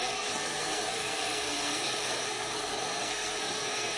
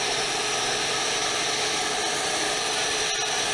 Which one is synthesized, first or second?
first